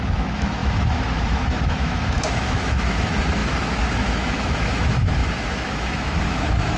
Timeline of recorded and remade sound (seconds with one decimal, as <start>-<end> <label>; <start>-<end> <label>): 0.0-6.8 remade

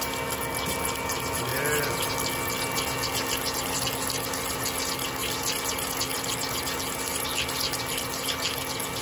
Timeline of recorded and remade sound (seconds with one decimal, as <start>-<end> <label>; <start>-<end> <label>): 0.0-9.0 recorded

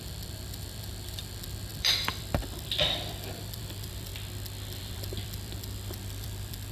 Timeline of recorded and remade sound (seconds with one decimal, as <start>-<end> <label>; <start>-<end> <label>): 0.0-4.1 remade; 4.1-4.8 recorded; 4.8-6.7 remade

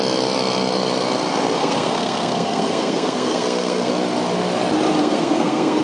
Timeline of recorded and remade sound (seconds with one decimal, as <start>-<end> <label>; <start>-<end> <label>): 0.0-1.6 recorded; 1.6-3.9 remade; 3.9-5.0 recorded; 5.0-5.8 remade